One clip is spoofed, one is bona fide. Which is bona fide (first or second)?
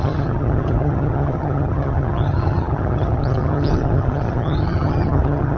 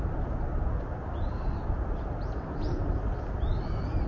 second